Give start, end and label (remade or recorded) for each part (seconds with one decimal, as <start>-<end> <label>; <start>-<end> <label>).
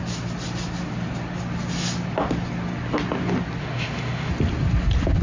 0.0-3.6 recorded; 3.6-4.3 remade; 4.3-5.2 recorded